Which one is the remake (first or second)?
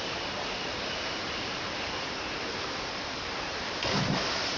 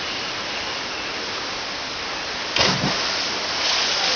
first